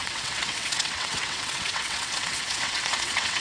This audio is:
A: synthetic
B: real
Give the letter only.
A